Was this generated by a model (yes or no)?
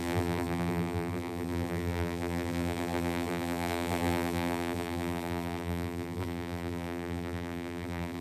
yes